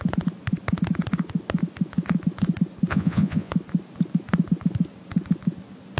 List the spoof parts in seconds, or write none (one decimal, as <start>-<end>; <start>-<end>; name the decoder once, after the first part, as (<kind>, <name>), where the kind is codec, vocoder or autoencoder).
2.9-3.5 (vocoder, Vocos)